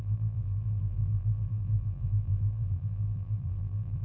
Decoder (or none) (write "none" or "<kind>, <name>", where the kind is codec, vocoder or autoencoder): vocoder, BigVGAN v2